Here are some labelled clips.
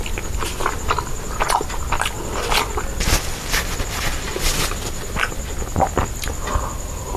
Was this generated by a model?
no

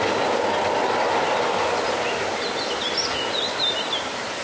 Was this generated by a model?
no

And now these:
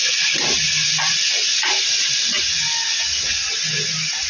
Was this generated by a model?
no